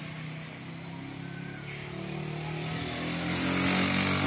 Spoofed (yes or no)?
no